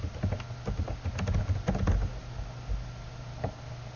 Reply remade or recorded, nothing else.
recorded